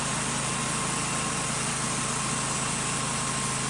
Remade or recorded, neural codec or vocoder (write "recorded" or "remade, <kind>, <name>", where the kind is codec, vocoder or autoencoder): recorded